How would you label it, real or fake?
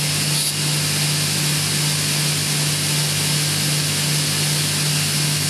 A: real